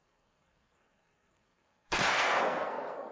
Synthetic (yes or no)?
yes